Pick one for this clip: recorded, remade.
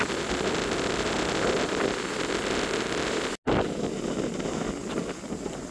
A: recorded